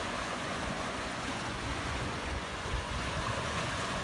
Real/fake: fake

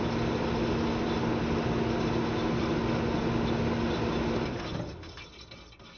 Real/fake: real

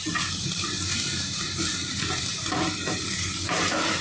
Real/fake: fake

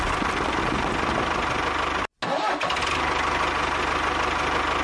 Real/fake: real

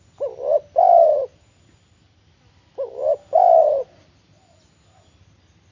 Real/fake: real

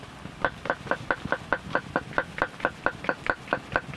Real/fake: real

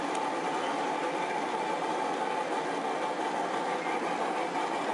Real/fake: real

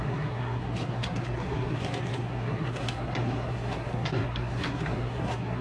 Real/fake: fake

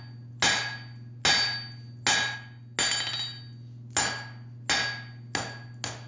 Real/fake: real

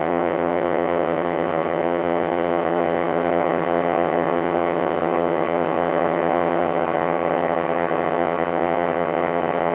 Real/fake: fake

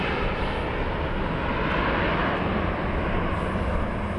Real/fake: real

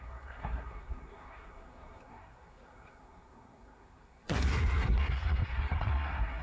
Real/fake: fake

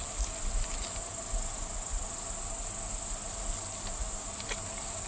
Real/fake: real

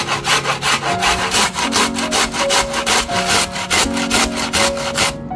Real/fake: real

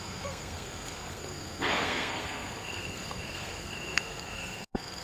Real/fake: fake